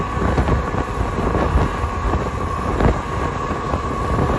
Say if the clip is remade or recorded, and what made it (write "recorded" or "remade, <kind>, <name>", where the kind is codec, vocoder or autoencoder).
recorded